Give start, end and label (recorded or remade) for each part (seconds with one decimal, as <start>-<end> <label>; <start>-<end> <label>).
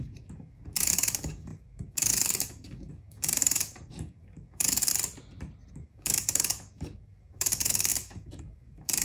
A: 0.0-4.9 remade; 4.9-5.7 recorded; 5.7-9.0 remade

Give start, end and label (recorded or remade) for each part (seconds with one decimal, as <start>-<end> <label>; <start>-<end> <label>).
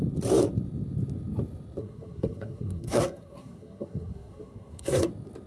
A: 0.0-1.8 recorded; 1.8-5.1 remade; 5.1-5.5 recorded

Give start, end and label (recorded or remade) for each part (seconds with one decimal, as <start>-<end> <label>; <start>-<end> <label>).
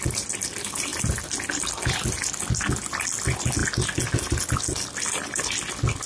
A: 0.0-6.1 recorded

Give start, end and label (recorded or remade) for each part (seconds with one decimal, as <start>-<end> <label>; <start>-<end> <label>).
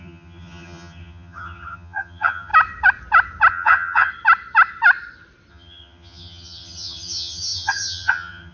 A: 0.0-2.5 remade; 2.5-3.5 recorded; 3.5-4.1 remade; 4.1-5.5 recorded; 5.5-8.5 remade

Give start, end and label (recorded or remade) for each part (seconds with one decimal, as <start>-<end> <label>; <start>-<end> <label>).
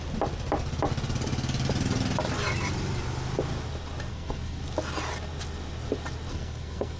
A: 0.0-4.1 recorded; 4.1-4.6 remade; 4.6-6.3 recorded; 6.3-7.0 remade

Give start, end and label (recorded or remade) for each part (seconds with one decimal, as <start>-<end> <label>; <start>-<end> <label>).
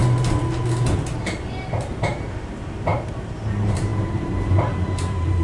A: 0.0-1.9 recorded; 1.9-5.4 remade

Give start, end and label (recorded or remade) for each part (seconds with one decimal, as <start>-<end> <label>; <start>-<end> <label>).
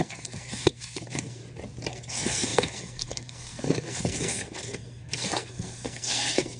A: 0.0-1.4 remade; 1.4-1.9 recorded; 1.9-6.6 remade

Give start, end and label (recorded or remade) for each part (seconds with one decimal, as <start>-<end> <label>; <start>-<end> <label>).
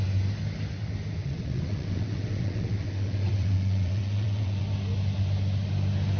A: 0.0-1.2 recorded; 1.2-4.6 remade; 4.6-6.2 recorded